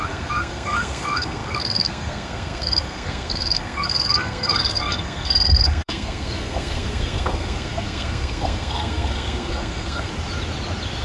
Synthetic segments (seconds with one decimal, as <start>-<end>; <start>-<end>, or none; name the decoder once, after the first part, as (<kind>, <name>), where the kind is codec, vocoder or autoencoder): 0.0-10.1 (codec, SNAC)